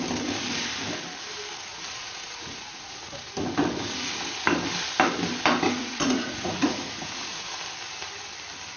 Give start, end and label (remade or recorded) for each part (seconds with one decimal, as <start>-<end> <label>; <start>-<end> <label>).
0.0-1.7 recorded; 1.7-3.2 remade; 3.2-5.8 recorded; 5.8-7.6 remade; 7.6-8.8 recorded